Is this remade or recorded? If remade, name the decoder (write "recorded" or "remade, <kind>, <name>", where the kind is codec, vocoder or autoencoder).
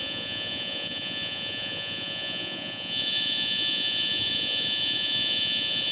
remade, vocoder, Vocos